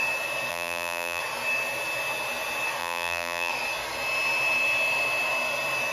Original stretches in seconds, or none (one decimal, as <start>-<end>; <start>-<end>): 0.0-0.5; 1.2-2.8; 3.5-5.9